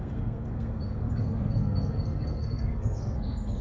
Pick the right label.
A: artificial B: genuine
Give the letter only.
A